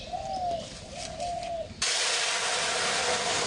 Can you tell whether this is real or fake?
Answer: real